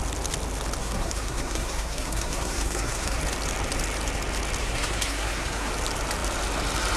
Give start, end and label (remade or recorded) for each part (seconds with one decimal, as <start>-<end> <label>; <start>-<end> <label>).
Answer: 0.0-0.8 recorded; 0.8-3.2 remade; 3.2-4.6 recorded; 4.6-5.7 remade; 5.7-7.0 recorded